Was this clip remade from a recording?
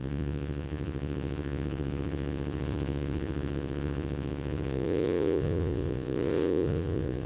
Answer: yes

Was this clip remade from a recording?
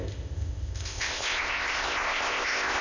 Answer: yes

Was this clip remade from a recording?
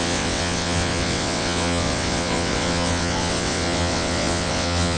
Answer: yes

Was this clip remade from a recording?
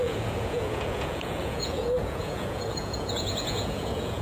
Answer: yes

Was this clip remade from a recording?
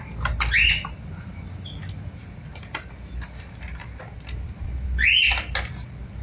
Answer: no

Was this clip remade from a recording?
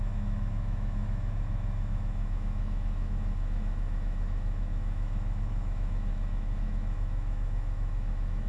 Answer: yes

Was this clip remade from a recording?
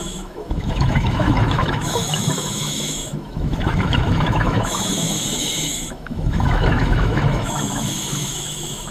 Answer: yes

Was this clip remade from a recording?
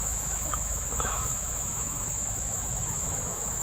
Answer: yes